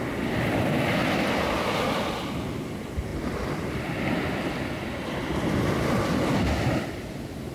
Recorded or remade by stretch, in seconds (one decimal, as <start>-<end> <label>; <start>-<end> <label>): 0.0-7.5 recorded